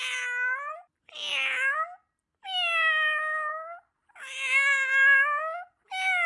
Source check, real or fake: real